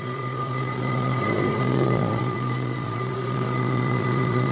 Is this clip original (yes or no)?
no